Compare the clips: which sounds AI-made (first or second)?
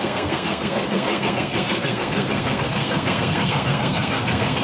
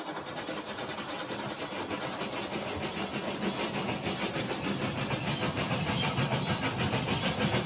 first